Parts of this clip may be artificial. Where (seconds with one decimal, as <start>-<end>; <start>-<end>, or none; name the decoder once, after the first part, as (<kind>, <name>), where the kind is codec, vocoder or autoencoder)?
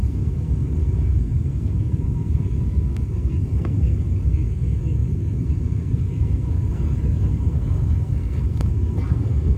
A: 0.0-9.6 (codec, SNAC)